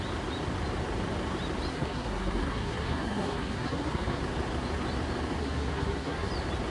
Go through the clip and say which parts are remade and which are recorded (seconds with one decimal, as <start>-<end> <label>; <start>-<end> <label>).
0.0-1.7 recorded; 1.7-4.2 remade; 4.2-5.4 recorded; 5.4-6.3 remade; 6.3-6.7 recorded